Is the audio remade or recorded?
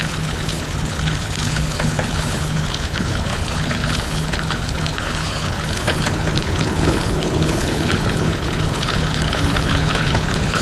remade